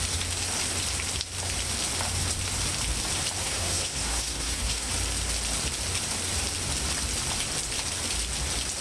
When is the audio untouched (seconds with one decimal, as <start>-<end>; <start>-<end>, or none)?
0.0-3.4; 4.9-8.8